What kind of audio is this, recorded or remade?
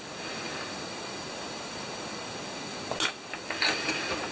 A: recorded